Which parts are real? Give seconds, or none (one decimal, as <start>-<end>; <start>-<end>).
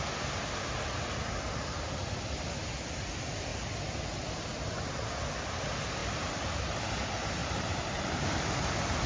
0.0-6.0; 6.8-7.4